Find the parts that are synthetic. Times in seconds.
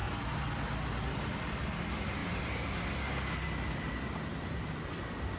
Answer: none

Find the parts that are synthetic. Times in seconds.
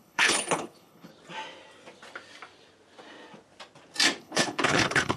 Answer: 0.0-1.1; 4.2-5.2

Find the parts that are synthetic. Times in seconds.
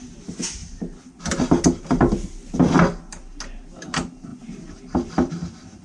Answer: none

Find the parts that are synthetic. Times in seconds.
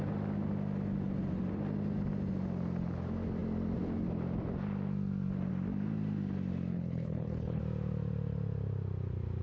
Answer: 6.7-7.6